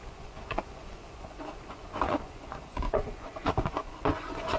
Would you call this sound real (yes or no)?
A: no